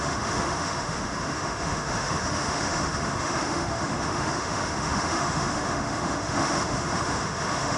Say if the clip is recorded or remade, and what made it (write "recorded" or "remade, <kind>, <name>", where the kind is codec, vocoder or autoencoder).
remade, autoencoder, DAC-VAE